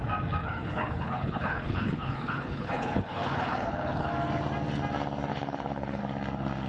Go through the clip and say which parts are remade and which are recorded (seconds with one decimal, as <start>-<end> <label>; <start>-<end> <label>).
0.0-0.4 recorded; 0.4-4.1 remade; 4.1-5.3 recorded; 5.3-6.0 remade; 6.0-6.7 recorded